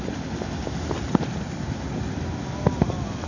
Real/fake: real